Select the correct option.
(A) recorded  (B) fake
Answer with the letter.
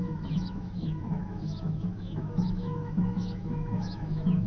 B